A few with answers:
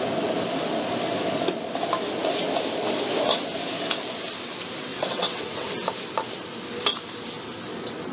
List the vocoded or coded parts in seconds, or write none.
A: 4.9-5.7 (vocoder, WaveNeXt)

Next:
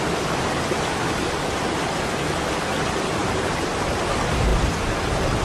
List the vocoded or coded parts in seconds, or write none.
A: 3.2-4.0 (vocoder, BigVGAN v2)

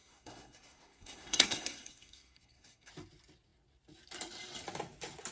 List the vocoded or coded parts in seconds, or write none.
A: 0.0-2.9 (codec, SNAC)

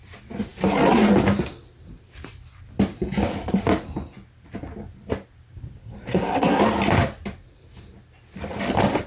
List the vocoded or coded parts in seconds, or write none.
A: 5.8-6.6 (codec, SNAC)

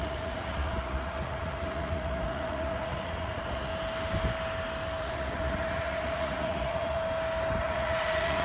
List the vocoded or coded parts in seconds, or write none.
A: 0.0-3.7 (vocoder, Vocos); 5.0-7.0; 7.6-8.4

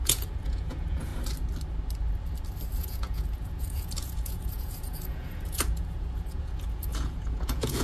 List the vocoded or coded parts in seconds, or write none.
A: 0.0-1.1 (vocoder, Vocos); 2.8-7.8